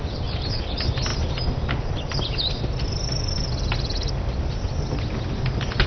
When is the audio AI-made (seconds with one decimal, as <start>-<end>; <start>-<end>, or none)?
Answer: none

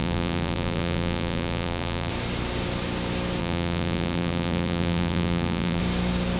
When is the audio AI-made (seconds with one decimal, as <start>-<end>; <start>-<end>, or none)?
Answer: 0.0-2.1; 3.4-5.8

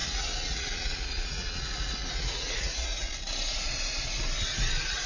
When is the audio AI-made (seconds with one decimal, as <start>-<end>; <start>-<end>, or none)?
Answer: 0.0-3.1

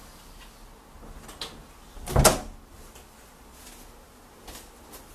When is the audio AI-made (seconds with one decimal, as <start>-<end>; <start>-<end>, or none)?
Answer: none

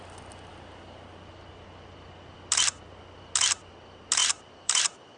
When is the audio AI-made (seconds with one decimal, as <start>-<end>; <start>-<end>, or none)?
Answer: 4.2-5.2

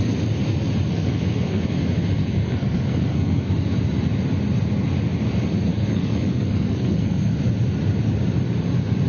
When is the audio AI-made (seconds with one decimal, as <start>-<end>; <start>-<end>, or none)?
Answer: 0.9-1.6; 2.2-3.5; 5.7-7.3